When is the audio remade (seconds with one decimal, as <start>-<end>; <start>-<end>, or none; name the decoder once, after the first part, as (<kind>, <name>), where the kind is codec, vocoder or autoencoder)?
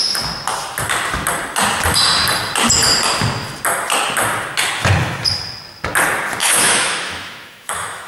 6.4-8.1 (autoencoder, DAC-VAE)